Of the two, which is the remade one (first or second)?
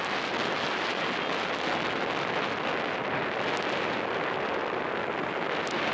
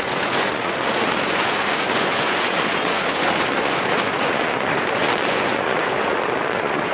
second